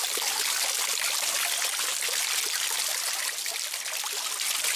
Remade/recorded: recorded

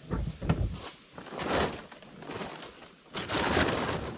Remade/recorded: recorded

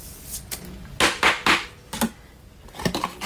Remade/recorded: recorded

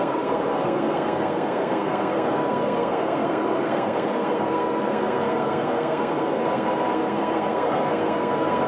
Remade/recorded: remade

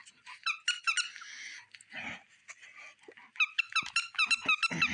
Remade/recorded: recorded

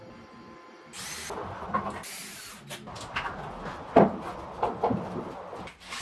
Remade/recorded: recorded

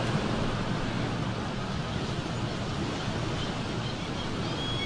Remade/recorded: recorded